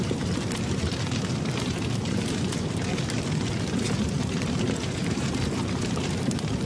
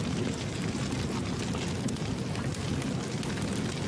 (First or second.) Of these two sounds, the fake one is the first